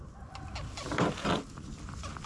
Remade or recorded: recorded